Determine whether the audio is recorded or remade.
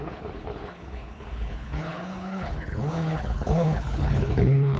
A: remade